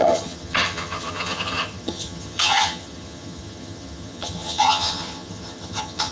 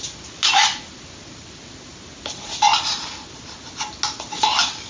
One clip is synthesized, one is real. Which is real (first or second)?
second